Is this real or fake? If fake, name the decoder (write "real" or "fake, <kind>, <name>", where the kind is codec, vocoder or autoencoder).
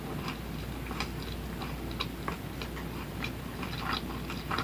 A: real